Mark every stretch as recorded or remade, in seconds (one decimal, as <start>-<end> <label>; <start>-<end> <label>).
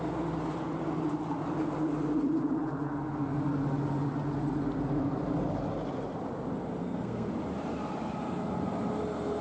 0.0-6.8 recorded; 6.8-7.3 remade; 7.3-9.4 recorded